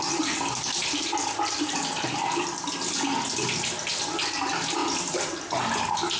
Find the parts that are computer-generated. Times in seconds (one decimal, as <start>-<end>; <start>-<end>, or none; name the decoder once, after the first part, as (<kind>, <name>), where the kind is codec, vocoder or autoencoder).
none